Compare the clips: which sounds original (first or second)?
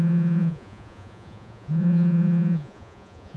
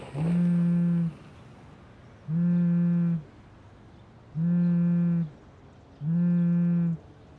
second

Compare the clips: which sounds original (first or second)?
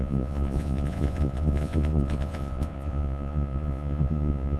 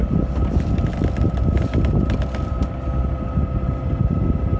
second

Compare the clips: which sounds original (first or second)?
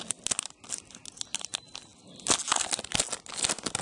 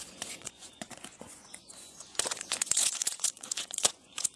first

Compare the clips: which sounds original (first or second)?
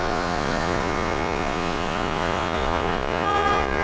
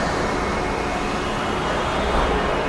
second